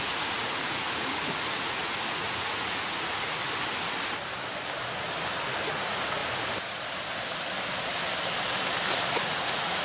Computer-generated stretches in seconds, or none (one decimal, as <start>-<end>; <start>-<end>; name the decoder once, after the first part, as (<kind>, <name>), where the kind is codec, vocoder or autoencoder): 0.0-3.4 (vocoder, Vocos); 5.6-6.2; 9.1-9.8